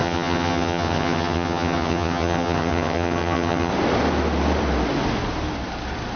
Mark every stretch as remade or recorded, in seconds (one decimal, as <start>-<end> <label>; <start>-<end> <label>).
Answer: 0.0-3.7 remade; 3.7-6.2 recorded